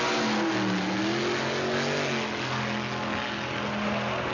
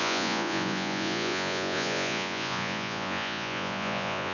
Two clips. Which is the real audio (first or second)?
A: first